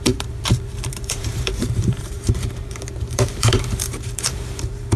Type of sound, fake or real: fake